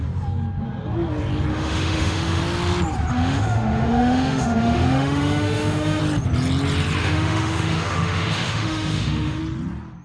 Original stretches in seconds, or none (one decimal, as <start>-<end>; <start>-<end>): 0.0-1.5; 2.4-3.1; 6.0-7.0; 9.4-10.0